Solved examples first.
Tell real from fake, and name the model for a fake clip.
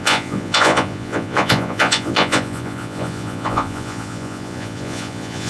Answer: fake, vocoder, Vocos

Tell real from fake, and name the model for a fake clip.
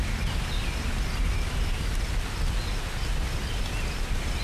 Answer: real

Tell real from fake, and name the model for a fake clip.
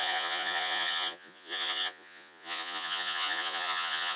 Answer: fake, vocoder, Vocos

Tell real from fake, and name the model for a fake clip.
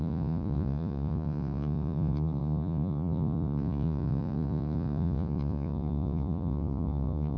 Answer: fake, vocoder, Vocos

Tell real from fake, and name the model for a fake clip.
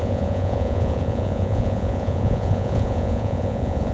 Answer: fake, vocoder, Vocos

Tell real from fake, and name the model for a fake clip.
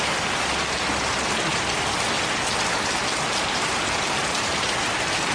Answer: real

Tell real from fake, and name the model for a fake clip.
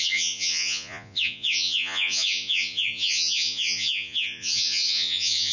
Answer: fake, vocoder, Vocos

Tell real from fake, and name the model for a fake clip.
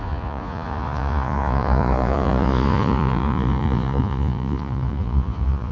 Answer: fake, vocoder, Vocos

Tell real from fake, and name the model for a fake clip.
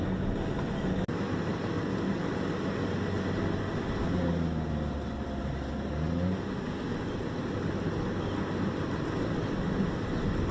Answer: real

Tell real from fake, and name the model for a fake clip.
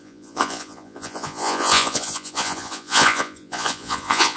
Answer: fake, vocoder, Vocos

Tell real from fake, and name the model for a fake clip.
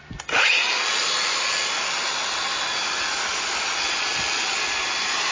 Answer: real